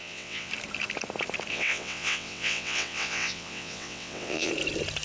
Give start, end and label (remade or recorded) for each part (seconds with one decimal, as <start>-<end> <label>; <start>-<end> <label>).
0.0-0.5 remade; 0.5-1.5 recorded; 1.5-4.5 remade; 4.5-5.0 recorded